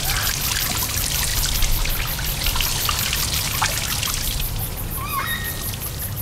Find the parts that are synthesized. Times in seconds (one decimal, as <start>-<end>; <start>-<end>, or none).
none